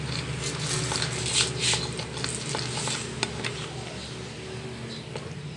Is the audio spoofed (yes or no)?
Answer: no